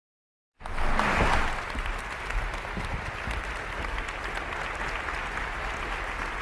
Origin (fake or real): real